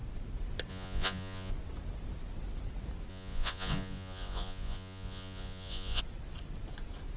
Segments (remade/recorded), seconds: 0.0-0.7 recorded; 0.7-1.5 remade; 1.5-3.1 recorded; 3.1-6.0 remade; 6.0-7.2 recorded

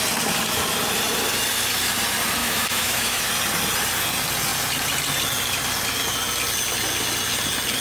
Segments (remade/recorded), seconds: 0.0-2.4 recorded; 2.4-3.3 remade; 3.3-7.8 recorded